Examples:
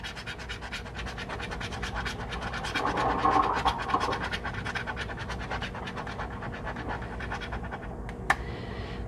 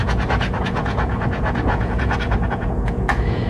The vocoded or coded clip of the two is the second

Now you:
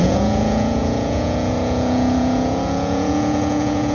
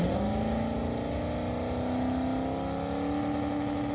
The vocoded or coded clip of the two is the first